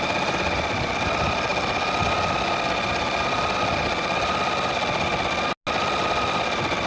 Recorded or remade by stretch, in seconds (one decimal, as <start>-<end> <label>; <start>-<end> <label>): 0.0-6.9 recorded